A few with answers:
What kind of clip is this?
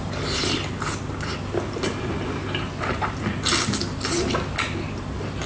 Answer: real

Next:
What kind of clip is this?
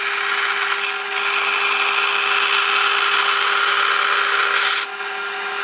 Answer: real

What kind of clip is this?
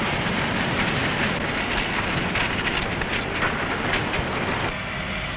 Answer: real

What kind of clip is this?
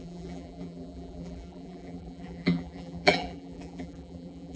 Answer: fake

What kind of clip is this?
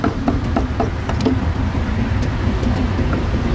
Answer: real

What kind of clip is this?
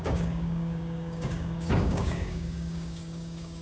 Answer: fake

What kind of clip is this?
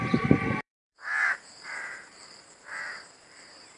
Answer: fake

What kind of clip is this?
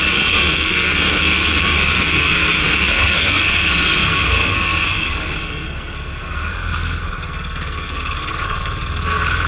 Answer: fake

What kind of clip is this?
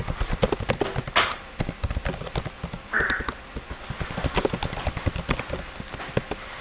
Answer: real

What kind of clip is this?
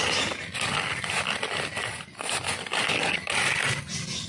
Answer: real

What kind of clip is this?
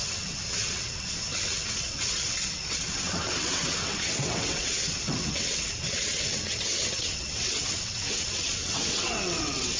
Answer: fake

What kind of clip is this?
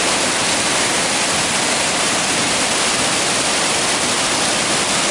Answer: real